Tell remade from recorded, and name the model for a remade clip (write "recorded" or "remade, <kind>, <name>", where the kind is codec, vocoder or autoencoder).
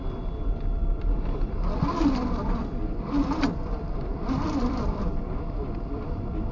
remade, vocoder, BigVGAN v2